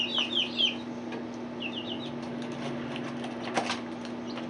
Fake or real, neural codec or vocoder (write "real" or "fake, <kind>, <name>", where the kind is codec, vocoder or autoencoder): real